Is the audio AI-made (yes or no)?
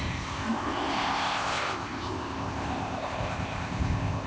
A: yes